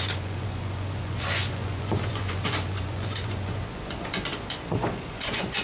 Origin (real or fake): fake